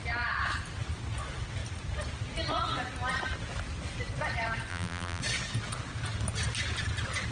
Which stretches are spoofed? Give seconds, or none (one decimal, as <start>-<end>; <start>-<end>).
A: 4.7-5.2